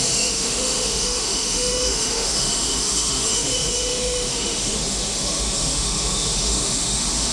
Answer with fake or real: fake